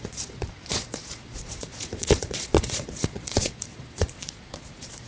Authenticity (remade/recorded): remade